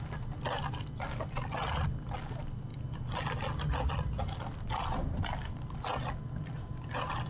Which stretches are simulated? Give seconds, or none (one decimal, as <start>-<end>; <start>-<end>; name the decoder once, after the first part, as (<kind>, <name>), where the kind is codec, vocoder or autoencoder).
none